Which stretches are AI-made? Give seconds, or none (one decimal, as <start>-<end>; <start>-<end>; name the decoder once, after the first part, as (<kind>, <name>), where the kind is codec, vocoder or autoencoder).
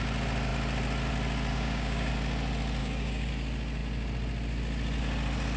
1.5-2.1 (codec, DAC); 2.8-3.3